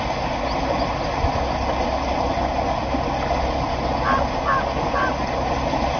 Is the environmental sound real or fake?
real